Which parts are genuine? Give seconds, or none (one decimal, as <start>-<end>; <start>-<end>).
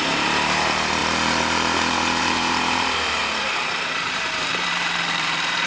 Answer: 1.0-2.2